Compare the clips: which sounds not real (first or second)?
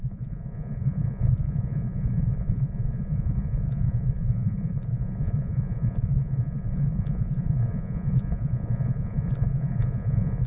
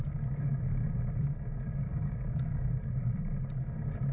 first